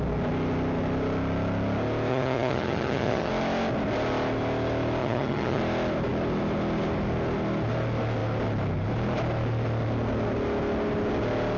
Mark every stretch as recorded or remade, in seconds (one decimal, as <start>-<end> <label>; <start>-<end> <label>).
0.0-2.1 recorded; 2.1-3.3 remade; 3.3-5.0 recorded; 5.0-5.6 remade; 5.6-11.6 recorded

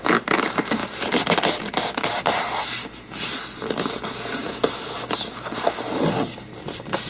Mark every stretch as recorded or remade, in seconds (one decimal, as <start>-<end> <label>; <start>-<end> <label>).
0.0-7.1 recorded

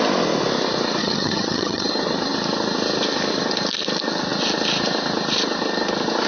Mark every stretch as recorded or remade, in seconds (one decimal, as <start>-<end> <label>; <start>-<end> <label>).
0.0-1.0 recorded; 1.0-1.9 remade; 1.9-6.3 recorded

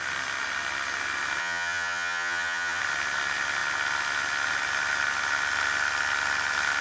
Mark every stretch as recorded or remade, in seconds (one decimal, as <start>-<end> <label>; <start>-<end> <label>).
0.0-1.4 recorded; 1.4-2.8 remade; 2.8-6.8 recorded

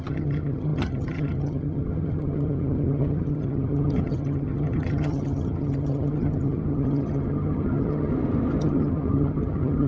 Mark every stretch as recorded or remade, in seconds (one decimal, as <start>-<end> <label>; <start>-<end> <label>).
0.0-8.1 remade; 8.1-8.6 recorded; 8.6-9.9 remade

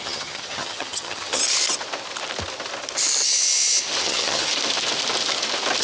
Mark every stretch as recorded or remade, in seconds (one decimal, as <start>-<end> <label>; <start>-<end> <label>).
0.0-1.4 remade; 1.4-4.0 recorded; 4.0-4.5 remade; 4.5-5.8 recorded

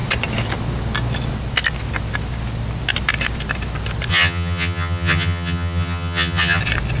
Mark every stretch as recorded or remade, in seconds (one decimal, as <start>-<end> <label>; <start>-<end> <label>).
0.0-4.1 recorded; 4.1-6.6 remade; 6.6-7.0 recorded